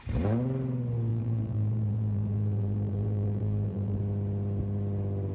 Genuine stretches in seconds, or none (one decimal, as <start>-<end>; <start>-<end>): 0.0-1.1; 4.0-5.3